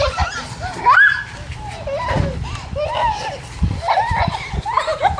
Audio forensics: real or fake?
real